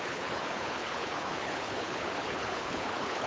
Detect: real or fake fake